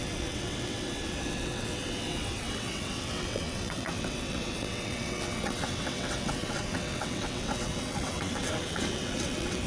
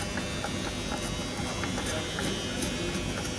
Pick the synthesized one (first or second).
first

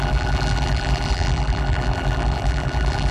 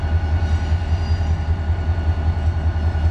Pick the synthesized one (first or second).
first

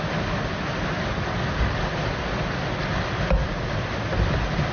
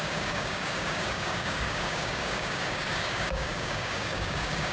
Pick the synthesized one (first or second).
second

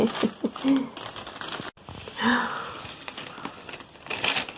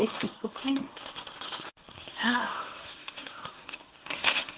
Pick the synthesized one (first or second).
second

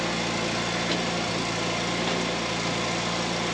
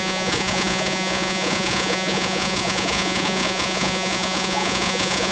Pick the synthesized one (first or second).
second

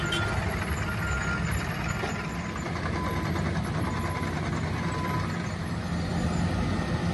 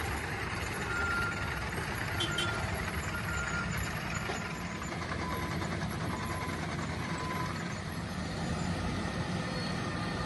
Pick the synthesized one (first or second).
second